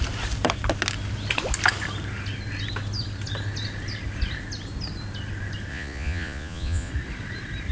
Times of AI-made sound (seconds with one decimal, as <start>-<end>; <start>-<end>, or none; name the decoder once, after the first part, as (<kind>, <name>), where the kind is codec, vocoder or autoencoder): 5.7-6.9 (vocoder, Vocos)